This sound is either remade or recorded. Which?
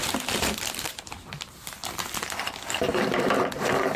remade